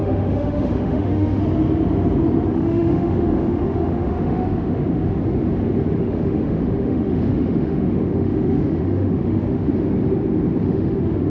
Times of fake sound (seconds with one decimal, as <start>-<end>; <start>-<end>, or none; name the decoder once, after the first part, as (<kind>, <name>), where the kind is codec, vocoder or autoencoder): 0.0-1.4 (autoencoder, DAC-VAE); 2.5-5.2; 6.0-9.7; 10.6-11.3